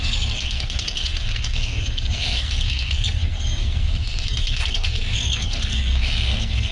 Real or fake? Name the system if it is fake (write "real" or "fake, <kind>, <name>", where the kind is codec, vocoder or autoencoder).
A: fake, codec, SNAC